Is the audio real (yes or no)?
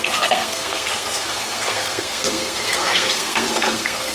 no